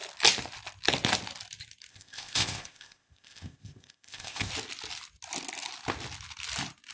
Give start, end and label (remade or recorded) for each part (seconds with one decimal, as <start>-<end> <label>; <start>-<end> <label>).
0.0-1.9 recorded; 1.9-4.5 remade; 4.5-6.9 recorded